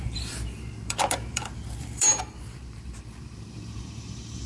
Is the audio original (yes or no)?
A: no